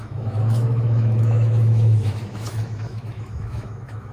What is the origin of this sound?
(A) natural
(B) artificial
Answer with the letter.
B